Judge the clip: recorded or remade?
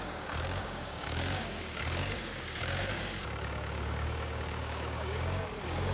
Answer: remade